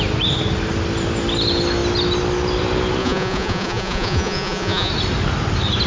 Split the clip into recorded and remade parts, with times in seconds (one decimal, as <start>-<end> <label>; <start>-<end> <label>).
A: 0.0-3.0 recorded; 3.0-4.9 remade; 4.9-5.9 recorded